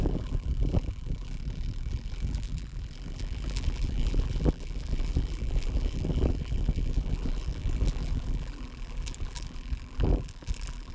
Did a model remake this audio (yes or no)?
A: yes